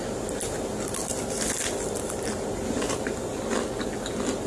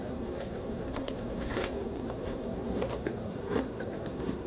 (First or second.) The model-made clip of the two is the second